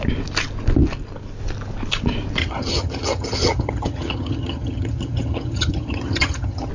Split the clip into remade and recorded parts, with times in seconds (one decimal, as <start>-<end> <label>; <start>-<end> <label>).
0.0-2.4 recorded; 2.4-6.7 remade